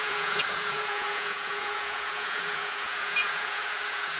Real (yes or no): no